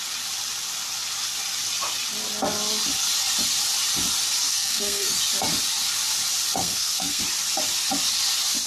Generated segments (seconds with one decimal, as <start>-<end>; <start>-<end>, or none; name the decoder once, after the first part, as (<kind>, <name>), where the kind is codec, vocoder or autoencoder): 4.5-5.2 (codec, SNAC); 6.6-7.2